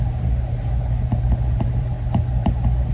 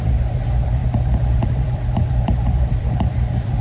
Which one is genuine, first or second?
first